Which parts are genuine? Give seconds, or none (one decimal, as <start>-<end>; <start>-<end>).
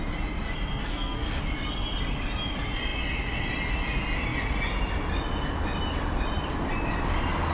0.0-0.7; 1.4-7.5